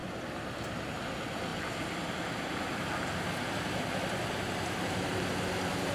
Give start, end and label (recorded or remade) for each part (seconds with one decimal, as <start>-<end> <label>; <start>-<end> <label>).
0.0-1.5 recorded; 1.5-2.2 remade; 2.2-5.9 recorded